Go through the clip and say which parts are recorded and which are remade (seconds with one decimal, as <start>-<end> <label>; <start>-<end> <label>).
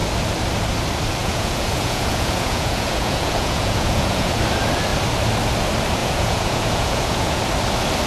0.0-1.2 recorded; 1.2-4.4 remade; 4.4-6.0 recorded; 6.0-7.4 remade; 7.4-8.1 recorded